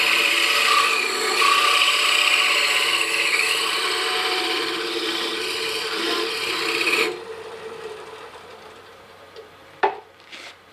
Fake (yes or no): yes